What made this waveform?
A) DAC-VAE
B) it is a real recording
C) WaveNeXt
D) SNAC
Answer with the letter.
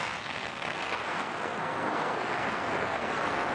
D